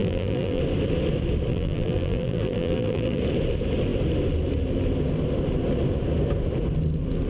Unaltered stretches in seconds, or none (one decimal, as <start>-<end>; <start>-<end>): 0.6-1.5; 3.2-7.3